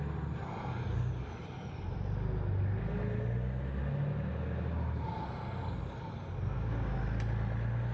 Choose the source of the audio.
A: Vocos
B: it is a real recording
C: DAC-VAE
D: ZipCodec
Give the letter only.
B